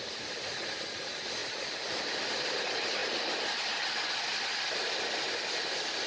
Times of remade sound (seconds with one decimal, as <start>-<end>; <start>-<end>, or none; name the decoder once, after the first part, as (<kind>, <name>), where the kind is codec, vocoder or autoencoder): none